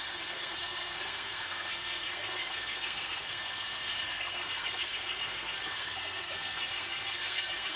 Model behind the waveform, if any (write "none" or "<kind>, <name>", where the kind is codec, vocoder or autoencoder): codec, SNAC